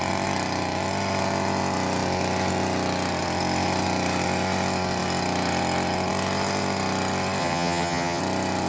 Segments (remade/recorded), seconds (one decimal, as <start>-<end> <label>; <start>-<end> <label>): 0.0-7.4 recorded; 7.4-8.2 remade; 8.2-8.7 recorded